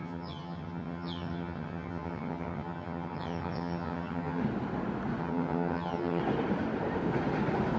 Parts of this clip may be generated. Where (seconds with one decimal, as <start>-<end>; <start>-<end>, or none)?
0.0-4.4; 5.2-6.2